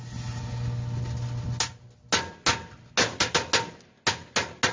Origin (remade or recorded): recorded